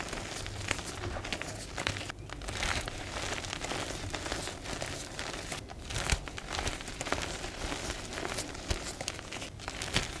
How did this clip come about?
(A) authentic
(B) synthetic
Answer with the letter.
A